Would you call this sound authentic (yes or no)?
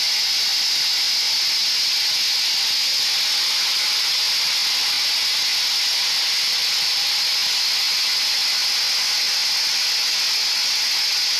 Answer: yes